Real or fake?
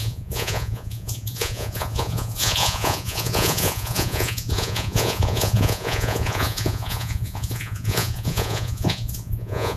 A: fake